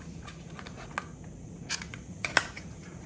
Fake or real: fake